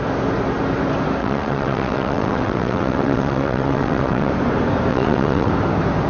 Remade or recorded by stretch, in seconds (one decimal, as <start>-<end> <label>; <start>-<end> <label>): 0.0-1.2 recorded; 1.2-4.3 remade; 4.3-4.9 recorded; 4.9-5.5 remade; 5.5-6.1 recorded